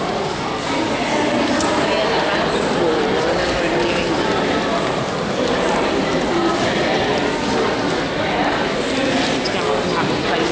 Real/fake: real